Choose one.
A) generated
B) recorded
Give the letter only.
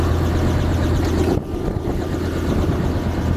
B